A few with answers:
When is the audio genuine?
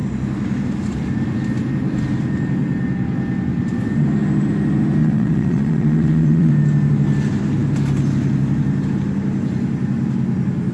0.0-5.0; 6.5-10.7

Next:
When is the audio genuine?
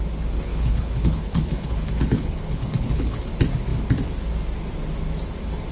0.0-0.5; 3.3-5.7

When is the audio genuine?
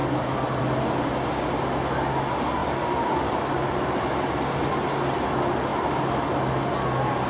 0.0-7.3